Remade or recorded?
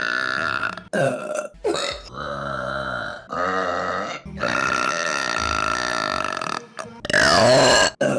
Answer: recorded